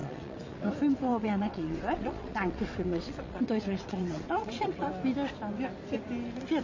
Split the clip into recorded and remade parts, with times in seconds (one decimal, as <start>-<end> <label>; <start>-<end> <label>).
0.0-0.7 remade; 0.7-1.1 recorded; 1.1-4.9 remade; 4.9-6.6 recorded